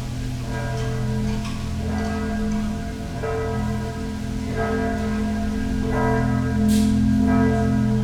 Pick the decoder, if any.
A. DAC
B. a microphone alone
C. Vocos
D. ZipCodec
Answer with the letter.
B